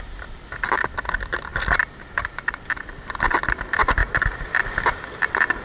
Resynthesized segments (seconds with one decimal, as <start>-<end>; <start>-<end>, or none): 4.0-4.6